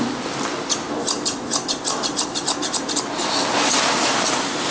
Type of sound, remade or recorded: recorded